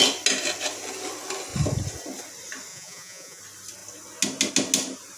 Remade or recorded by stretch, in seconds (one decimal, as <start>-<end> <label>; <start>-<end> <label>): 0.0-2.7 recorded; 2.7-3.4 remade; 3.4-5.2 recorded